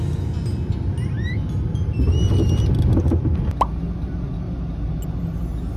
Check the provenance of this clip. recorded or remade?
recorded